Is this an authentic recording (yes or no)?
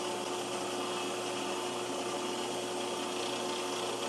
yes